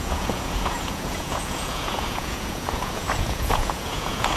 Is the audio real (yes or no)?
no